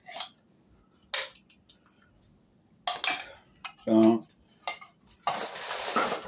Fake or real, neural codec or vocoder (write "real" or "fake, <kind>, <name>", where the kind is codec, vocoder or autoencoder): real